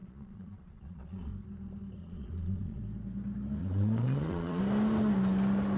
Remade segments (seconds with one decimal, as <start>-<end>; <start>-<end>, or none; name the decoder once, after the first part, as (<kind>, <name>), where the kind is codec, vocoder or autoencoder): 0.0-1.3 (vocoder, Vocos); 2.0-2.8; 3.6-4.6